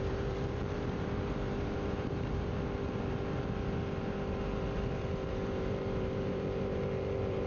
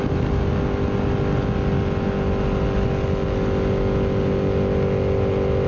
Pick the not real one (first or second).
first